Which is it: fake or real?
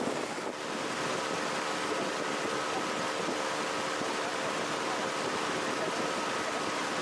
real